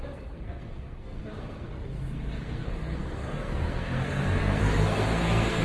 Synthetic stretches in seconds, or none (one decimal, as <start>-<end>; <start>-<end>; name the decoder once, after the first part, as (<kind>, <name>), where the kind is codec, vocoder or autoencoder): 0.0-5.6 (codec, SNAC)